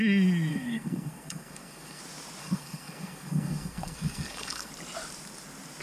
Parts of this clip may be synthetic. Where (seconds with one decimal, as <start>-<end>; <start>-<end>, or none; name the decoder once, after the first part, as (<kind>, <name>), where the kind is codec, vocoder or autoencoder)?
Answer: 0.5-2.0 (codec, SNAC); 2.4-4.7